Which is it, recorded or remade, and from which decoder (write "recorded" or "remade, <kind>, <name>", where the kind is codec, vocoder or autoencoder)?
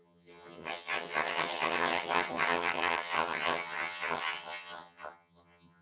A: remade, vocoder, HiFi-GAN